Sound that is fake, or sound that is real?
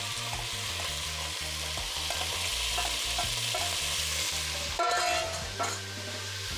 real